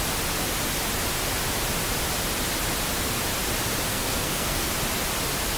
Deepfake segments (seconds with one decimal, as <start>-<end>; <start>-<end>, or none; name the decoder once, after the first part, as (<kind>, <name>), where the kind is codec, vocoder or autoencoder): 3.9-4.7 (codec, SNAC)